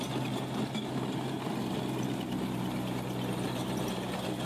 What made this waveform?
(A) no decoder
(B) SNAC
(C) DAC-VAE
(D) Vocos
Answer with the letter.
A